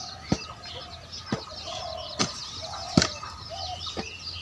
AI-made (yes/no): no